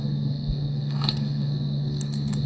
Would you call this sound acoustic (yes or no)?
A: no